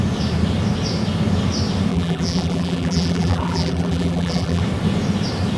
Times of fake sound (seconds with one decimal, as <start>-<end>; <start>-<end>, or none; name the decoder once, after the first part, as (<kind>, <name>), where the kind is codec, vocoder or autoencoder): 1.9-4.6 (vocoder, BigVGAN v2)